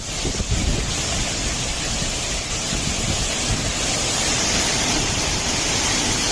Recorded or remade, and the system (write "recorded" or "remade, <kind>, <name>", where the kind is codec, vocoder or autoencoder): recorded